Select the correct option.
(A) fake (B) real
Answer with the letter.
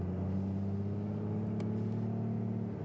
B